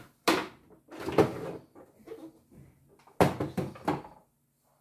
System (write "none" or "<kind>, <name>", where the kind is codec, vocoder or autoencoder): none